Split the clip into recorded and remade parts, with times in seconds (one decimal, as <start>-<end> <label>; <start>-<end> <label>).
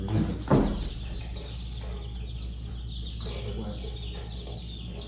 0.0-5.1 recorded